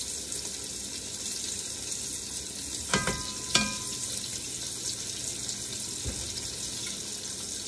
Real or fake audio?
real